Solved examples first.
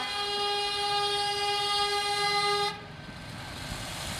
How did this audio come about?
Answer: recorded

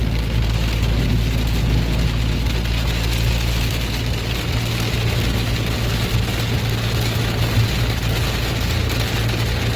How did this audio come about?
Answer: recorded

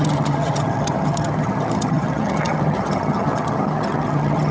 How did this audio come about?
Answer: remade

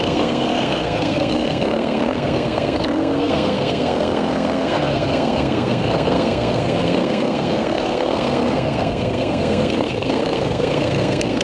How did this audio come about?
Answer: remade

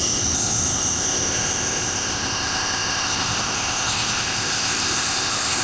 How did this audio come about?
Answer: remade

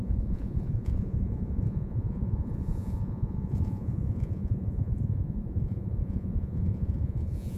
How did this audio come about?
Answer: remade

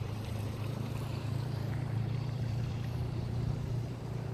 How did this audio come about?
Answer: remade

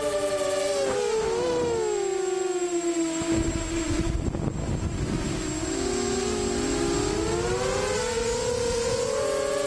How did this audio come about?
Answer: recorded